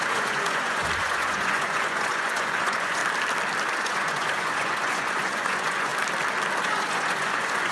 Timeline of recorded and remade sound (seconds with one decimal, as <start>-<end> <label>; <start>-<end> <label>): 0.0-3.0 remade; 3.0-3.8 recorded; 3.8-5.9 remade; 5.9-6.6 recorded; 6.6-7.7 remade